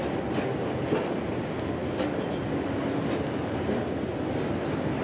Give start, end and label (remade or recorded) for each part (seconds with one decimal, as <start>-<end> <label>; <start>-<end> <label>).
0.0-5.0 recorded